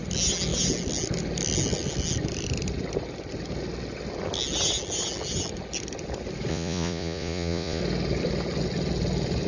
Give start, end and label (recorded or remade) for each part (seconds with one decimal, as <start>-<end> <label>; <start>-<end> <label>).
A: 0.0-6.5 recorded; 6.5-7.8 remade; 7.8-9.5 recorded